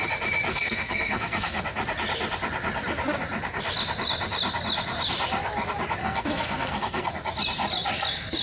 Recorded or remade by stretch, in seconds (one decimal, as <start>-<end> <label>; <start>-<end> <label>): 0.0-0.5 recorded; 0.5-1.6 remade; 1.6-6.0 recorded; 6.0-7.1 remade; 7.1-8.4 recorded